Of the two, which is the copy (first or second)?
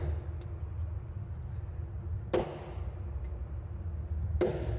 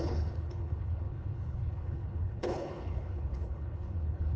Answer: second